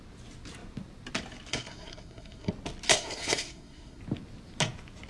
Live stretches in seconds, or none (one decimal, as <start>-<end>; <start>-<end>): 0.0-1.5; 2.5-2.9; 4.0-5.1